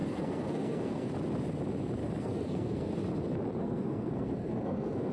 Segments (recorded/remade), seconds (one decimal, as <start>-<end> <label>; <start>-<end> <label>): 0.0-1.1 remade; 1.1-2.0 recorded; 2.0-2.9 remade; 2.9-3.6 recorded; 3.6-5.1 remade